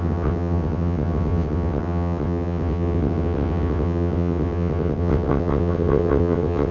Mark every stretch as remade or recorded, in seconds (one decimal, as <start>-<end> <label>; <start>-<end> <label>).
0.0-6.7 remade